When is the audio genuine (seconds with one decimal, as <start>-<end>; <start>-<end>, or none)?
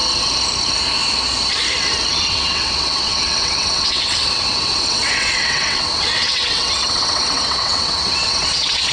0.0-2.1